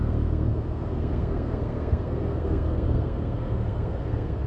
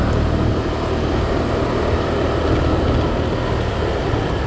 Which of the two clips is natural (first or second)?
second